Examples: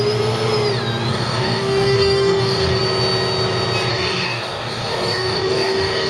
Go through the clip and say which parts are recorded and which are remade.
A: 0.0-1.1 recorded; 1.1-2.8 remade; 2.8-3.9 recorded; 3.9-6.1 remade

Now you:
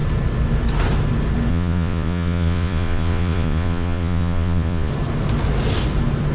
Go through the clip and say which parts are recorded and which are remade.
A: 0.0-1.5 recorded; 1.5-4.9 remade; 4.9-6.3 recorded

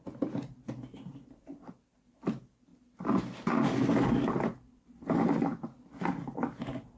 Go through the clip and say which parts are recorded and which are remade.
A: 0.0-7.0 recorded

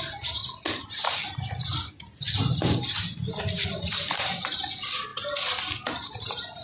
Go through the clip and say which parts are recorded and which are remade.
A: 0.0-0.4 remade; 0.4-3.4 recorded; 3.4-5.1 remade; 5.1-5.9 recorded; 5.9-6.6 remade

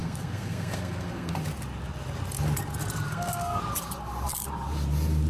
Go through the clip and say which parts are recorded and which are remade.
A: 0.0-1.4 remade; 1.4-3.1 recorded; 3.1-3.6 remade; 3.6-5.3 recorded

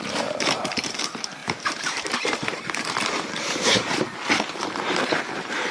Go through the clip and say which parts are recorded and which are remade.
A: 0.0-5.7 remade

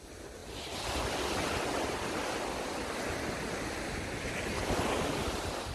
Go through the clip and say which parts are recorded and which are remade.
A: 0.0-5.7 recorded

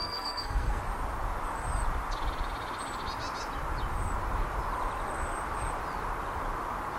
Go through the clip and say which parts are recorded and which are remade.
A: 0.0-0.8 remade; 0.8-7.0 recorded